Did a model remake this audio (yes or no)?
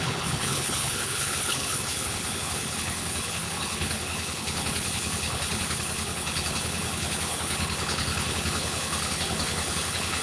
yes